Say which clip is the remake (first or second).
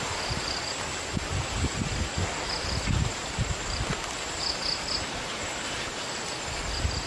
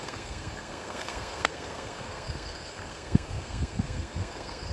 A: second